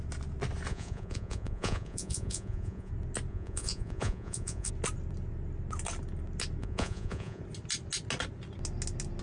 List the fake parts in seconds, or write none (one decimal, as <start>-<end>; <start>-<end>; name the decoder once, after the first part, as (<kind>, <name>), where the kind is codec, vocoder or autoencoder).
0.7-2.9 (vocoder, Vocos); 3.3-4.7; 6.6-7.4